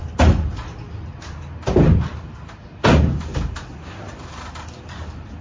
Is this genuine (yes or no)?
yes